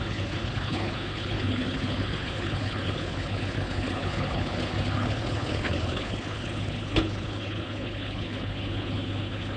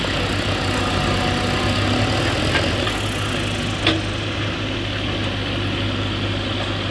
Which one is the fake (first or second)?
first